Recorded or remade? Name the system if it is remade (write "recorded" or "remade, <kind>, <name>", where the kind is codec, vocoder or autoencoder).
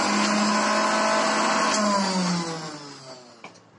recorded